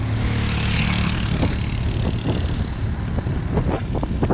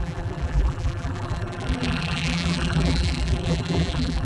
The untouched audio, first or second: first